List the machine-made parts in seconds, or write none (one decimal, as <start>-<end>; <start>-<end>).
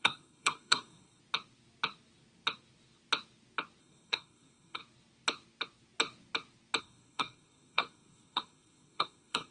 0.0-1.2; 3.8-4.8; 6.8-9.5